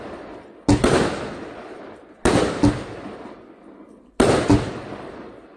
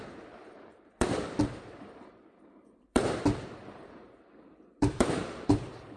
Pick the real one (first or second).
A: first